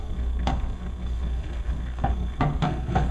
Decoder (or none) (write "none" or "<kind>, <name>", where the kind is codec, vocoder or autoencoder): codec, SNAC